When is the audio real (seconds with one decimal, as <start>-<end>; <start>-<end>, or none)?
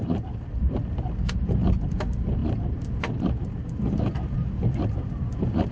0.8-1.3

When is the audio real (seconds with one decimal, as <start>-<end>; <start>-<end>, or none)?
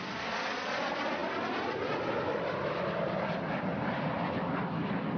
0.0-5.2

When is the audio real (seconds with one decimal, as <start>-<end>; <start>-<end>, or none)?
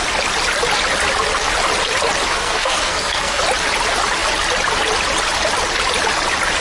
0.0-2.3; 3.4-6.6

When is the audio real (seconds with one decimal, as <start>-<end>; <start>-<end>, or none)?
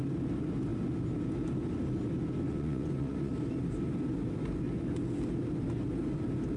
0.0-2.5; 3.3-6.6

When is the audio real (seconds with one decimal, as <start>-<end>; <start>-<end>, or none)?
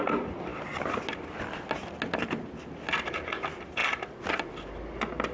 0.0-5.3